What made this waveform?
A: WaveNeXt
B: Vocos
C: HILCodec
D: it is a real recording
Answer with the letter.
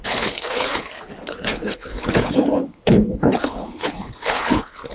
C